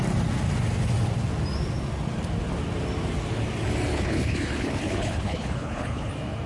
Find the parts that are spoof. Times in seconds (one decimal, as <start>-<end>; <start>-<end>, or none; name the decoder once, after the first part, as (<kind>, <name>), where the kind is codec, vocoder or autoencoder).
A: 3.9-6.1 (codec, HILCodec)

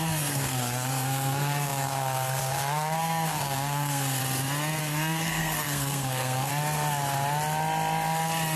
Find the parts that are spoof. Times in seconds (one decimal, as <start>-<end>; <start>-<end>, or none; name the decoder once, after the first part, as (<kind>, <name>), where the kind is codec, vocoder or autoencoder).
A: 0.0-4.2 (codec, SNAC); 4.8-6.5